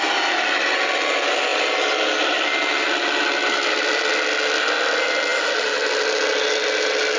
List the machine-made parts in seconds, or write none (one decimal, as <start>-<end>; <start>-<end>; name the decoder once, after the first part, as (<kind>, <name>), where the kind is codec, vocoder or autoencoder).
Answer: none